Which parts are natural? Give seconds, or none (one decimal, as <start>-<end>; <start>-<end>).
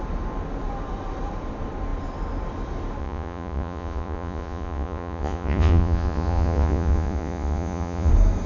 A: 0.0-3.0; 8.1-8.5